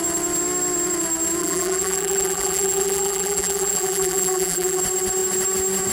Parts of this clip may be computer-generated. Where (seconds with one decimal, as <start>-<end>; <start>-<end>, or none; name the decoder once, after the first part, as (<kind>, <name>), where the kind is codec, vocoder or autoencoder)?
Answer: 1.4-4.8 (vocoder, BigVGAN v2)